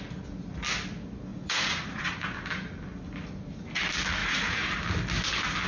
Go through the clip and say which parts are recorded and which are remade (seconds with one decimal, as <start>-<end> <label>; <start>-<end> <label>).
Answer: 0.0-1.3 recorded; 1.3-2.1 remade; 2.1-4.2 recorded; 4.2-4.8 remade; 4.8-5.7 recorded